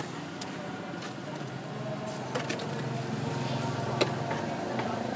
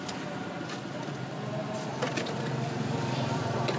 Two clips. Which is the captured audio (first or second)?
first